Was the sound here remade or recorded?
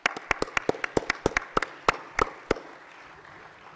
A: recorded